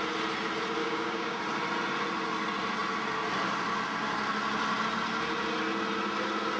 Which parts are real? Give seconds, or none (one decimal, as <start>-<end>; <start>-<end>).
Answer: 0.0-0.8; 1.4-6.6

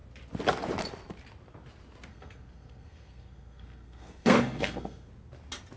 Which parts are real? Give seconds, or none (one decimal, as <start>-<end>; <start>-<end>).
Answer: 0.0-2.1; 5.1-5.8